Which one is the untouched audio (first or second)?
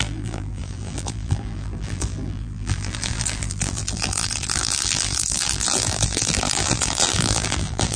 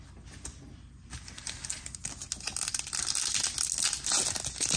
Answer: second